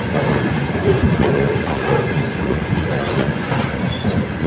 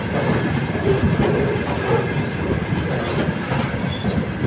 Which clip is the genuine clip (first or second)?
second